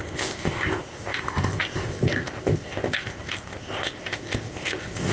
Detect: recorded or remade remade